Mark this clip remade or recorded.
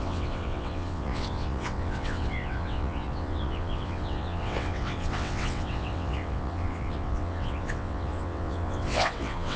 remade